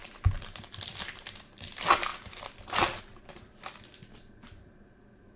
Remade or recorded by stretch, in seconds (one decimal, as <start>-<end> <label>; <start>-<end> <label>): 0.0-5.4 recorded